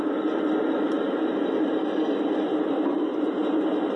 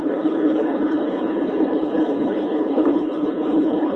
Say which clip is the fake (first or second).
second